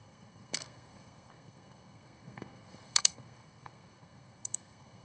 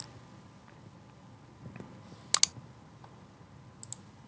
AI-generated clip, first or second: first